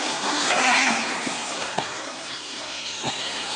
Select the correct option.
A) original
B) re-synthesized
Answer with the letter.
B